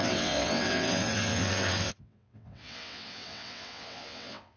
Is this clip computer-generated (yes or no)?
yes